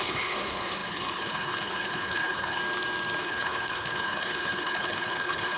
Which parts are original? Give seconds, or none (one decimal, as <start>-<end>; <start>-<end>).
2.6-3.2